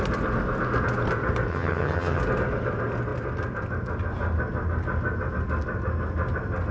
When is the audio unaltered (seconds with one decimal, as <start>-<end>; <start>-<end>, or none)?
0.0-1.5; 2.2-6.7